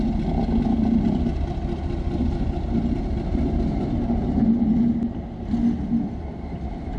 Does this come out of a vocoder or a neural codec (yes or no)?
no